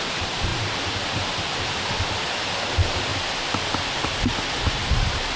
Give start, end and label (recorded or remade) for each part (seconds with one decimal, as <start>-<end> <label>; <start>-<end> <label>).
0.0-3.1 remade; 3.1-3.9 recorded; 3.9-5.4 remade